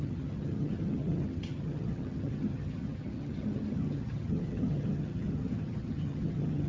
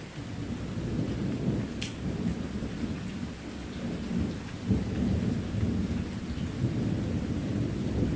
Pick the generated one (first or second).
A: first